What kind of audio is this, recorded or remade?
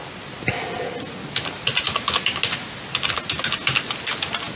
recorded